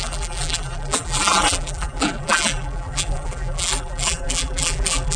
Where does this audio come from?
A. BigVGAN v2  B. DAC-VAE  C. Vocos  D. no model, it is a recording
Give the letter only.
A